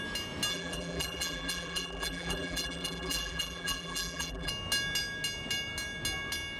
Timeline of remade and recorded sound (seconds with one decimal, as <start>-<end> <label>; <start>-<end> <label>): 0.0-0.5 recorded; 0.5-4.5 remade; 4.5-6.6 recorded